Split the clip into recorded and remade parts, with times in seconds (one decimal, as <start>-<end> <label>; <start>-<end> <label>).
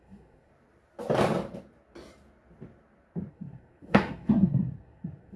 0.0-0.5 remade; 0.5-3.3 recorded; 3.3-5.4 remade